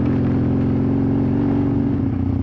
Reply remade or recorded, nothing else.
recorded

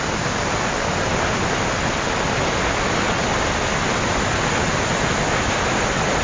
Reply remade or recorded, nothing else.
recorded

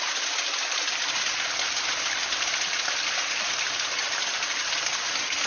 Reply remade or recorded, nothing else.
recorded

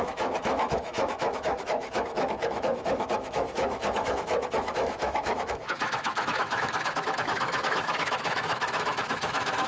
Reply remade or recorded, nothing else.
remade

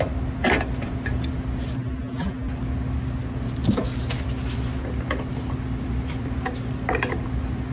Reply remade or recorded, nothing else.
recorded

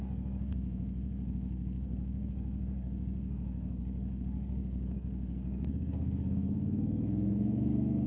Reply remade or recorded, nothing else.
remade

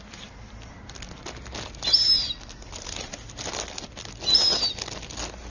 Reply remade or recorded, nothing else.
recorded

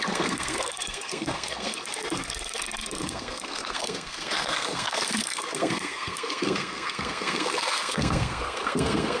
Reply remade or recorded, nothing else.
remade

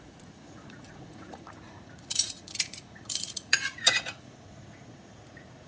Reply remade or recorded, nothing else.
remade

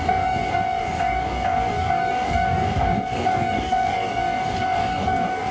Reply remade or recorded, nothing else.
remade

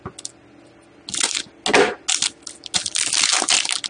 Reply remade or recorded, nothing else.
recorded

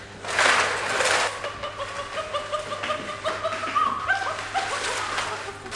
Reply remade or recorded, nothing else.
recorded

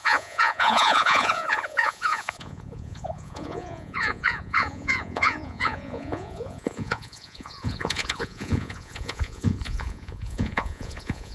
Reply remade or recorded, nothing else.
remade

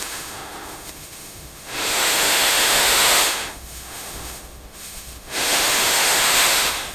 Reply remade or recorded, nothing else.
remade